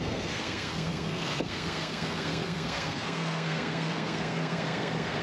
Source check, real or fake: fake